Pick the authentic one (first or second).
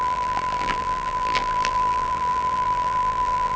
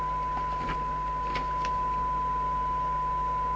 second